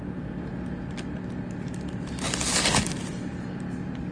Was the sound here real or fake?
real